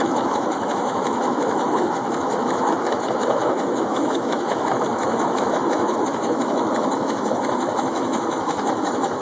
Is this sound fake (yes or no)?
yes